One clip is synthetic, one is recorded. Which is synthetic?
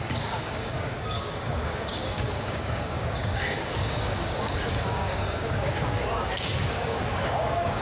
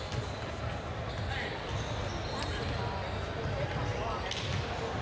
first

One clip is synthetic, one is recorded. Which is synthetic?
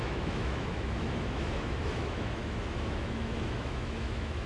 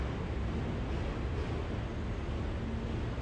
first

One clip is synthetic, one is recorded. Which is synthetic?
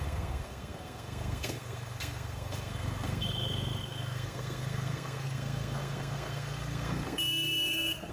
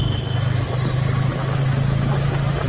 first